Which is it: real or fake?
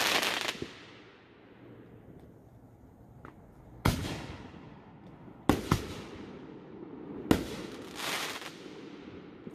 real